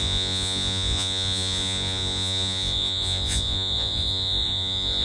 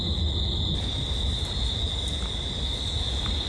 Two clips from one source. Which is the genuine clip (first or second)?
second